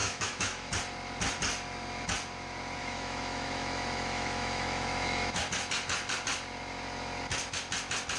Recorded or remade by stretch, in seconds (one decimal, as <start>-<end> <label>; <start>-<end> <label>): 0.0-0.7 remade; 0.7-2.8 recorded; 2.8-5.4 remade; 5.4-8.2 recorded

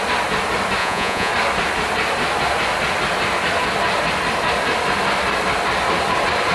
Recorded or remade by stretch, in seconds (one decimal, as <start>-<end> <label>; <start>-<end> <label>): 0.0-0.8 recorded; 0.8-1.3 remade; 1.3-6.5 recorded